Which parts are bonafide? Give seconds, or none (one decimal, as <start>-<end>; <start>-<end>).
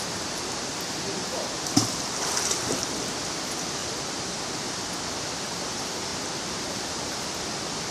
0.0-3.8; 4.4-7.9